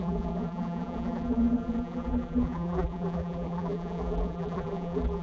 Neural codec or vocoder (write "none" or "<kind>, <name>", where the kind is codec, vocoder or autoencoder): vocoder, BigVGAN v2